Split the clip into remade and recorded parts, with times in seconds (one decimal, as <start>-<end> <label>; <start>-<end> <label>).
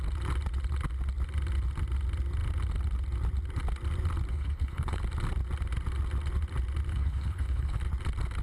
0.0-4.3 recorded; 4.3-5.0 remade; 5.0-6.9 recorded; 6.9-7.8 remade; 7.8-8.4 recorded